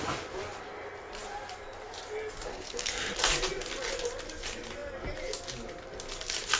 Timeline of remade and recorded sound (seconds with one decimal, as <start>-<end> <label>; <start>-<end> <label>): 0.0-2.5 recorded; 2.5-3.1 remade; 3.1-6.6 recorded